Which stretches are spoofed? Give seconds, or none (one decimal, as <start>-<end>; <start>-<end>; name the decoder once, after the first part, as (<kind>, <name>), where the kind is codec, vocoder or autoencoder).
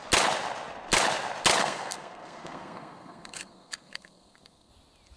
1.6-4.7 (codec, SNAC)